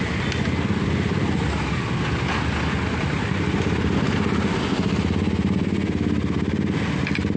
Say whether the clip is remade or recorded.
recorded